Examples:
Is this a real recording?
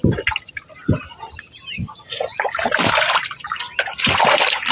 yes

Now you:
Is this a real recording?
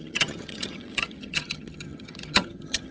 no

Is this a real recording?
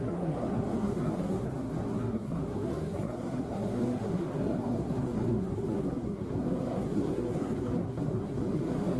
no